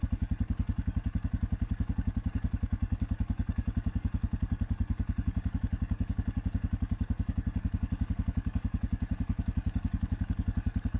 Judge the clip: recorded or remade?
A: remade